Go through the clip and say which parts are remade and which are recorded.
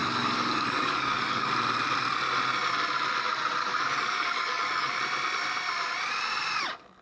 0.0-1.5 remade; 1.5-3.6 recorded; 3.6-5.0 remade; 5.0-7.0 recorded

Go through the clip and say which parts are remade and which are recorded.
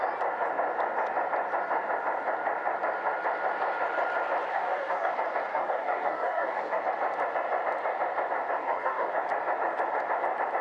0.0-4.5 recorded; 4.5-5.1 remade; 5.1-5.5 recorded; 5.5-6.8 remade; 6.8-8.6 recorded; 8.6-9.1 remade; 9.1-10.6 recorded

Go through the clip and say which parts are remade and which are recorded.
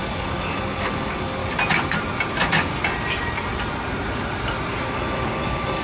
0.0-1.4 remade; 1.4-4.9 recorded; 4.9-5.8 remade